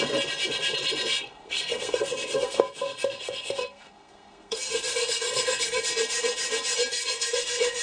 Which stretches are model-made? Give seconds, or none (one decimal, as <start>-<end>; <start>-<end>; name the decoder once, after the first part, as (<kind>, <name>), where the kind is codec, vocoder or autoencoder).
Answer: 1.1-5.8 (codec, SNAC); 6.9-7.8